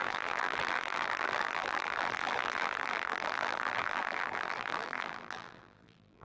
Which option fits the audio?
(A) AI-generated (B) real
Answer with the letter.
A